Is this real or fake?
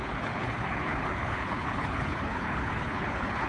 fake